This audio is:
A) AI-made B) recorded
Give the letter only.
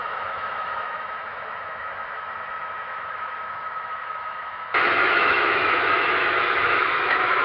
A